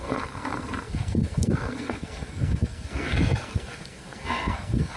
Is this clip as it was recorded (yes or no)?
no